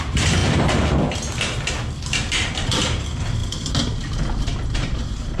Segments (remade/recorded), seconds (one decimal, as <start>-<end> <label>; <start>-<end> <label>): 0.0-0.4 remade; 0.4-2.3 recorded; 2.3-5.4 remade